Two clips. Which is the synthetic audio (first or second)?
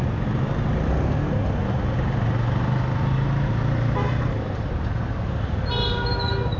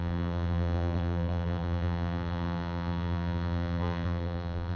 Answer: second